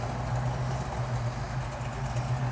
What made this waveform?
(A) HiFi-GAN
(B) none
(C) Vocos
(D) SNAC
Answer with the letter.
B